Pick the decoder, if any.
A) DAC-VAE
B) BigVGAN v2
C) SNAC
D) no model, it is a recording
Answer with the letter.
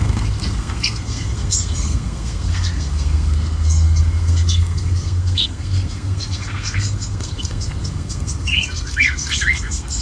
C